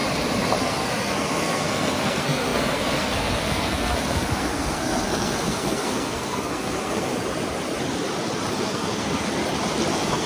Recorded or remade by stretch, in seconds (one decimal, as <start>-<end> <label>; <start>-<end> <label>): 0.0-0.6 recorded; 0.6-7.1 remade; 7.1-8.5 recorded; 8.5-9.4 remade; 9.4-9.9 recorded; 9.9-10.3 remade